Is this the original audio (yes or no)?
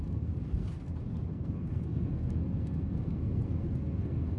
no